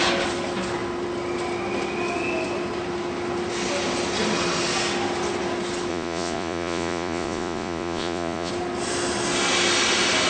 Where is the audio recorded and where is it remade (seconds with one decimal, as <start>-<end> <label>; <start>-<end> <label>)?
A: 0.0-5.9 recorded; 5.9-8.5 remade; 8.5-10.3 recorded